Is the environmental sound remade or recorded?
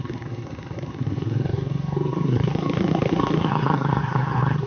remade